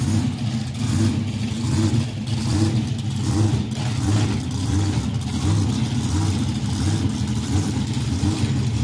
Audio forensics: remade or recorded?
recorded